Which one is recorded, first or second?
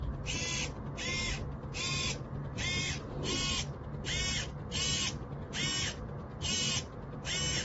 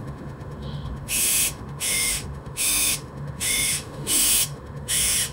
first